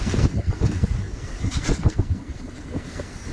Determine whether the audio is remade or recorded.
remade